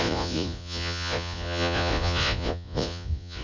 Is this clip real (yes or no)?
no